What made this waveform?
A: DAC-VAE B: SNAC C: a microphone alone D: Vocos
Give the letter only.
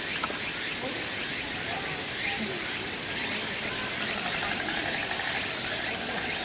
C